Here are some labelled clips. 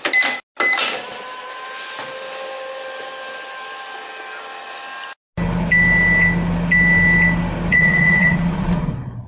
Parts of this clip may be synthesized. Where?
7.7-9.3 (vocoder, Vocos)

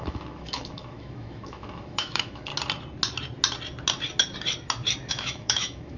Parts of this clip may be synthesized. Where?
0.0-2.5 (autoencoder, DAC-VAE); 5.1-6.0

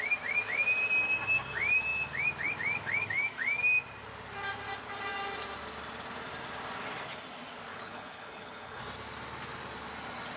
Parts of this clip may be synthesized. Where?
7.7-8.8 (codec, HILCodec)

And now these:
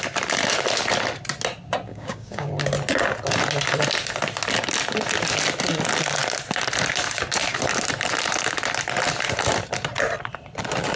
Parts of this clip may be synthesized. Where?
1.9-2.5 (codec, DAC)

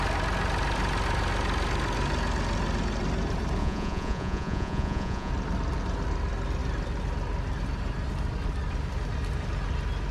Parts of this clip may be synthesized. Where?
3.6-5.3 (vocoder, Vocos)